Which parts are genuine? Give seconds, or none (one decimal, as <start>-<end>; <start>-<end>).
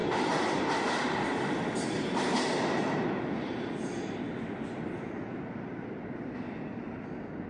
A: 0.0-7.5